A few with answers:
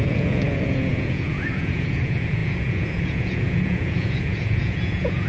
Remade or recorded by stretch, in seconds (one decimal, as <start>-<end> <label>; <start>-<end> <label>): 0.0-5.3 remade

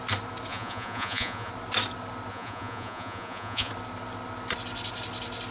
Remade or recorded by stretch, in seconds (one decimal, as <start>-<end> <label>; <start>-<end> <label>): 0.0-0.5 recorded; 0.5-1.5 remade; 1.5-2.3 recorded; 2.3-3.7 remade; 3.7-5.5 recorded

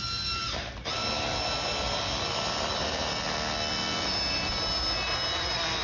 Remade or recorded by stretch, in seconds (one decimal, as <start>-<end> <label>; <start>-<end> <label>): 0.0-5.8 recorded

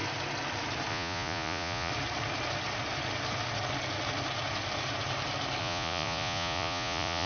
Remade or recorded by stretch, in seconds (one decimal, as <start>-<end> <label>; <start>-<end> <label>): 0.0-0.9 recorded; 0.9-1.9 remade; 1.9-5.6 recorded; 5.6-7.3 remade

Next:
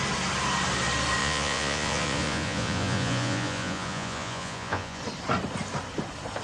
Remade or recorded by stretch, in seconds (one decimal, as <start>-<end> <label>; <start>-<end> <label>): 0.0-1.2 recorded; 1.2-5.0 remade; 5.0-6.4 recorded

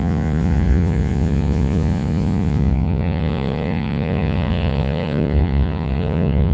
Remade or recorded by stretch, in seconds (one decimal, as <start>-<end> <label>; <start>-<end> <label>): 0.0-6.5 remade

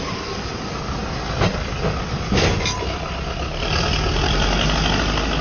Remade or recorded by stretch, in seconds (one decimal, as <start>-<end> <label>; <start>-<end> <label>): 0.0-5.4 recorded